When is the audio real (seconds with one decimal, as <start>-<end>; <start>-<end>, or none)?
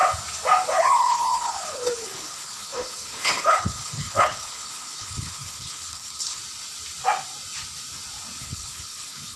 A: 0.0-0.7; 6.4-8.4